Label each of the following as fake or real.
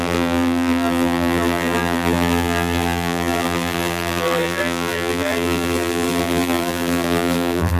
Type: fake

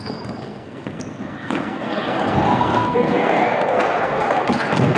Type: fake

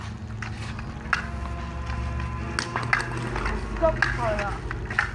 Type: real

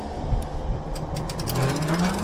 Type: real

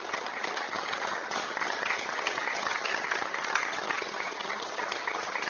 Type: fake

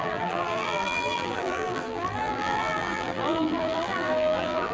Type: fake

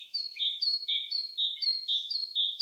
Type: fake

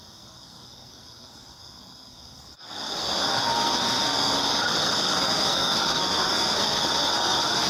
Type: fake